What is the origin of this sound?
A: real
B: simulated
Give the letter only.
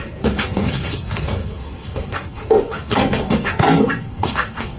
B